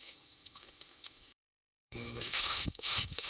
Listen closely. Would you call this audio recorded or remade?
remade